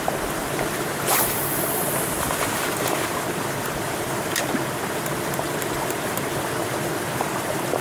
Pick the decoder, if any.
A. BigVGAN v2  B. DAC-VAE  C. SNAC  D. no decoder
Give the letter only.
A